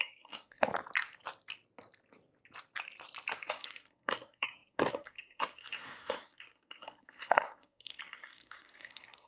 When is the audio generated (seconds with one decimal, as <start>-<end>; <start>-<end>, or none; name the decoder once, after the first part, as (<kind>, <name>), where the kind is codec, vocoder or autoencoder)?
0.0-0.7 (codec, SNAC); 3.5-9.3

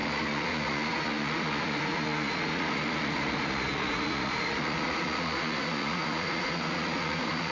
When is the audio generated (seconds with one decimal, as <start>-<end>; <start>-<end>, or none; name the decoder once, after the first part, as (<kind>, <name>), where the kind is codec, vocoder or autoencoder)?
0.0-7.5 (vocoder, Vocos)

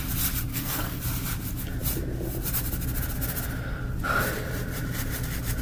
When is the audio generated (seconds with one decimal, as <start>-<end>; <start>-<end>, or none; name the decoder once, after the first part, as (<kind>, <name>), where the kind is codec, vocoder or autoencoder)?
0.5-1.0 (codec, SNAC)

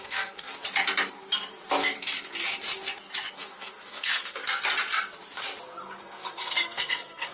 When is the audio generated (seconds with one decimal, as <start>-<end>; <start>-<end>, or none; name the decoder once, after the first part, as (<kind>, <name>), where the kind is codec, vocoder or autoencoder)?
0.0-0.5 (codec, SNAC); 3.3-4.4; 6.0-7.3